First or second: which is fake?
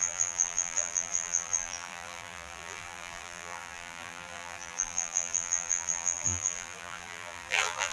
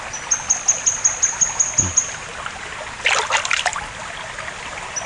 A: first